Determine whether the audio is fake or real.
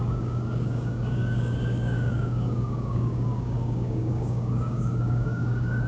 fake